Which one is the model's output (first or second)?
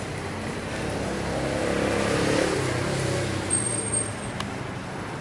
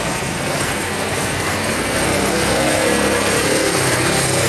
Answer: second